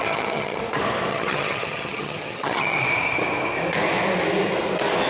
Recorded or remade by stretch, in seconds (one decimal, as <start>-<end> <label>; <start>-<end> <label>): 0.0-0.6 remade; 0.6-1.1 recorded; 1.1-2.8 remade; 2.8-5.1 recorded